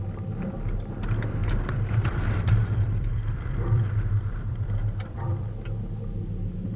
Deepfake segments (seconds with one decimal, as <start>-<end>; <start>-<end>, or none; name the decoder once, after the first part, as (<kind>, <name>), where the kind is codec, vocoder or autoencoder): 1.4-5.5 (vocoder, BigVGAN v2)